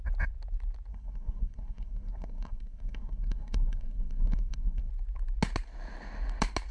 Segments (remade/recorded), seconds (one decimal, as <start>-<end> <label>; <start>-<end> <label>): 0.0-0.9 recorded; 0.9-4.9 remade; 4.9-6.7 recorded